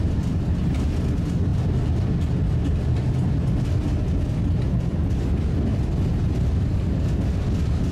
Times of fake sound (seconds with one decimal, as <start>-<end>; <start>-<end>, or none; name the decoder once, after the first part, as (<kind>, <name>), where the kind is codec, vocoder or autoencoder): none